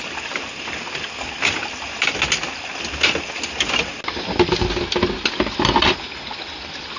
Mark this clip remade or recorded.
recorded